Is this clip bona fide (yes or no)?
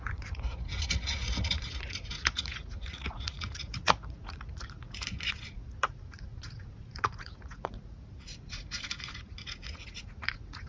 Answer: no